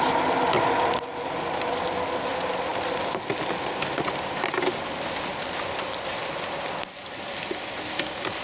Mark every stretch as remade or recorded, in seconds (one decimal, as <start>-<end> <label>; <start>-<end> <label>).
0.0-8.4 recorded